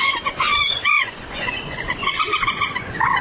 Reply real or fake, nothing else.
fake